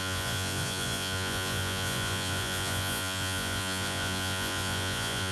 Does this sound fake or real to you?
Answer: fake